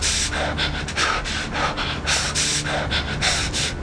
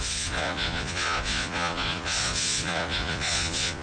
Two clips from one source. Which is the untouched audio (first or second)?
first